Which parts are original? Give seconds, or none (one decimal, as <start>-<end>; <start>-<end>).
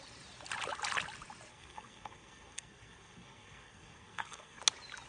0.0-1.5; 4.6-5.1